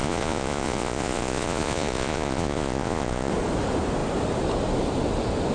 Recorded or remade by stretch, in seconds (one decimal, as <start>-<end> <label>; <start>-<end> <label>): 0.0-3.3 remade; 3.3-5.5 recorded